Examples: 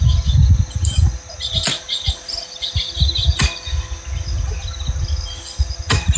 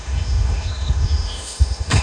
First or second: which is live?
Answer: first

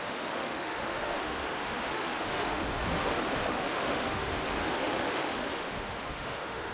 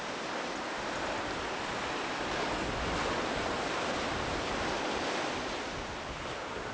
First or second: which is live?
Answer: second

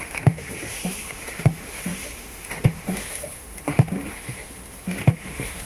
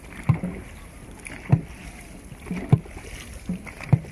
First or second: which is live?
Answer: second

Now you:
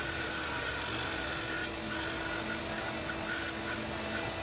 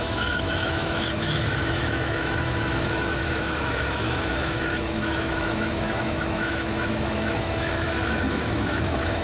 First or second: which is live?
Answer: first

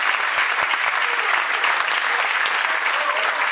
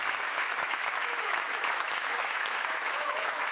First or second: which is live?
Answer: first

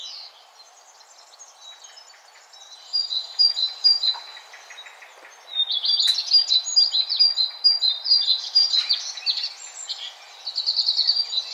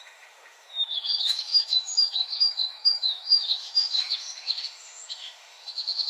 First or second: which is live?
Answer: first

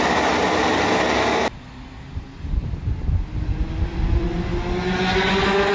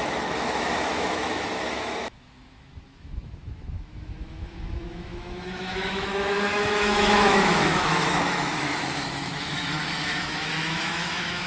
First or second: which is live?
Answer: first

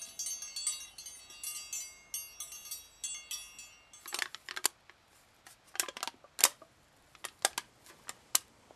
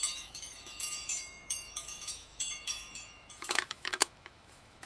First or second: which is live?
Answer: first